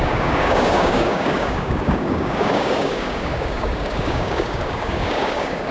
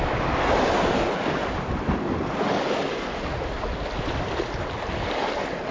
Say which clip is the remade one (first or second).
first